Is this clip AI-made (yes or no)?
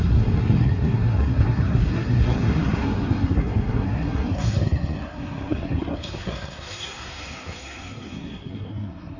yes